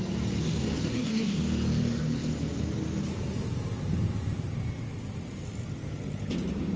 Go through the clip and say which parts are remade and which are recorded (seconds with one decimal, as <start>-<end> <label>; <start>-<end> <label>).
0.0-0.4 recorded; 0.4-1.4 remade; 1.4-6.8 recorded